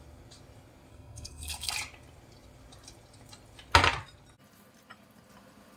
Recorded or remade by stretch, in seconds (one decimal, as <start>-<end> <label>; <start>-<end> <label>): 0.0-0.9 recorded; 0.9-1.7 remade; 1.7-5.8 recorded